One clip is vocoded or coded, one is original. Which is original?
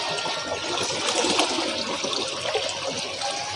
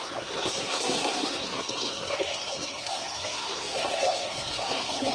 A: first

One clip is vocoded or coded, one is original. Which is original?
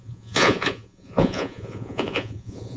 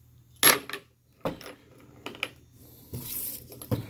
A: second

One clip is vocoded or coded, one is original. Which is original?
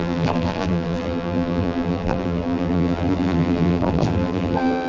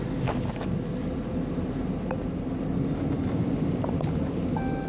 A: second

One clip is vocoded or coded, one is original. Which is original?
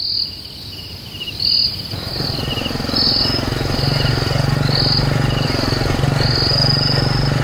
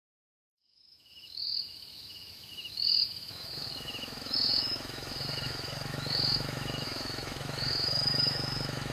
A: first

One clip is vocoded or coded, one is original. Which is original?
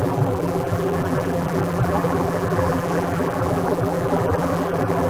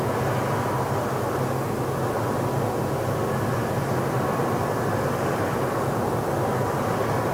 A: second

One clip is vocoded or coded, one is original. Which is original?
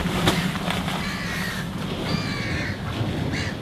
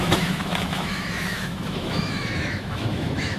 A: first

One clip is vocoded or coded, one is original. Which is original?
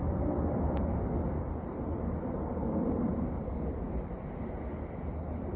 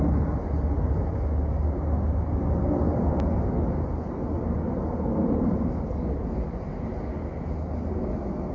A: second